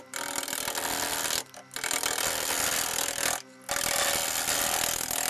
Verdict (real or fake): real